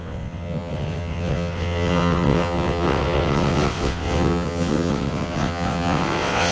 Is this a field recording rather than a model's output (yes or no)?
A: no